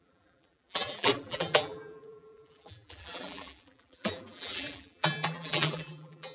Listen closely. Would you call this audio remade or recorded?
remade